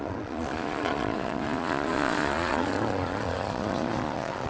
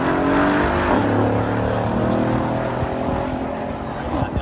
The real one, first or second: second